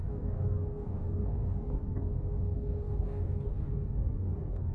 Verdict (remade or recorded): remade